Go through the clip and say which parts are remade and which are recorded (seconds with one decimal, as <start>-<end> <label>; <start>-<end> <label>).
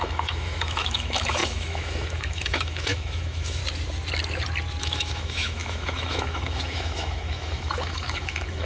0.0-3.6 remade; 3.6-4.8 recorded; 4.8-8.7 remade